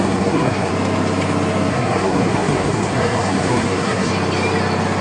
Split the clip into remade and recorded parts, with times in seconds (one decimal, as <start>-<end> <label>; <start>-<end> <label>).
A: 0.0-0.7 remade; 0.7-1.7 recorded; 1.7-4.1 remade; 4.1-5.0 recorded